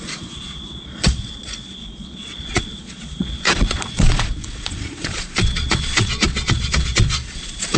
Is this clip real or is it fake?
fake